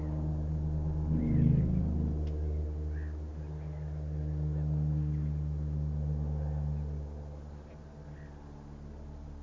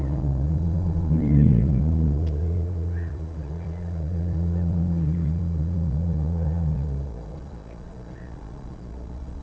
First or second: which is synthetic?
second